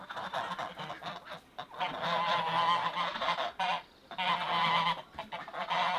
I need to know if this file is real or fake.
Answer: real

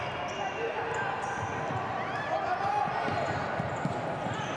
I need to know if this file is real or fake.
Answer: real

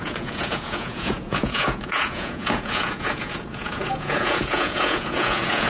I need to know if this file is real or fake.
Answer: fake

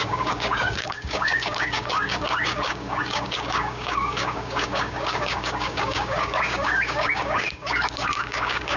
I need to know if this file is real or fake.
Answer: fake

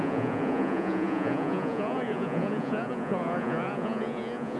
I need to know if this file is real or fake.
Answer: fake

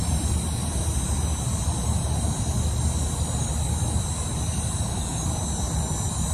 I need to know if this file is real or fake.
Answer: real